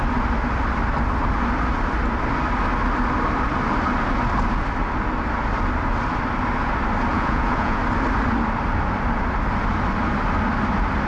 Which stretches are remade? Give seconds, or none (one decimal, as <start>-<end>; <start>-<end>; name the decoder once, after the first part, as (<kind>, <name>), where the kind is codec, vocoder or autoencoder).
7.1-7.8 (vocoder, Vocos)